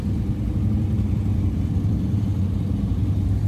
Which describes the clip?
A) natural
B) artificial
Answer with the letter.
A